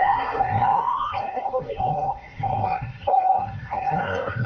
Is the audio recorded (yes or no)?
no